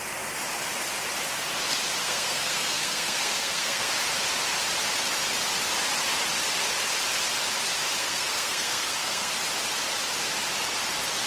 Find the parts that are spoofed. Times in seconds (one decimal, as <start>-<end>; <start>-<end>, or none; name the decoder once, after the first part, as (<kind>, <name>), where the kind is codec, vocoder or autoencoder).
2.0-3.9 (codec, SNAC); 8.0-9.3